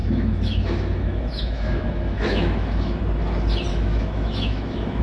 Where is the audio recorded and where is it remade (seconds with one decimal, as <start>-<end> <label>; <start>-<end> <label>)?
0.0-3.0 remade; 3.0-3.7 recorded; 3.7-5.0 remade